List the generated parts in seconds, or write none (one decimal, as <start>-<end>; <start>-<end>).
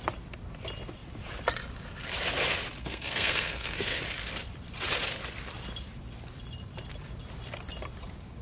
2.8-4.0